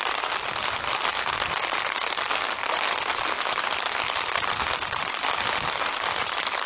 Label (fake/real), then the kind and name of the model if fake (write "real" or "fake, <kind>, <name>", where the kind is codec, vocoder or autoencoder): fake, vocoder, BigVGAN v2